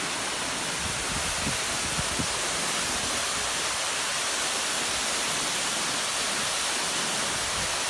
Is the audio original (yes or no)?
yes